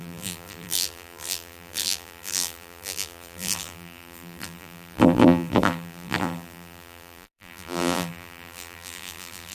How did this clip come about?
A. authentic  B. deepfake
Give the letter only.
B